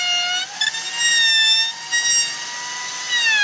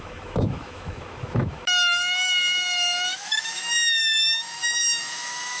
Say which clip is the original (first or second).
first